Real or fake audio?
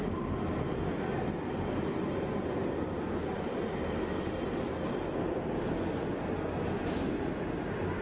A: real